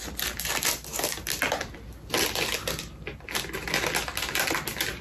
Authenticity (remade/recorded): recorded